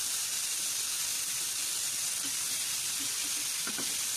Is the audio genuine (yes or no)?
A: no